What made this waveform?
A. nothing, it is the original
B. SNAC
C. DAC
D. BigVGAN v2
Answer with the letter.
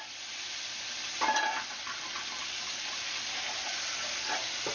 A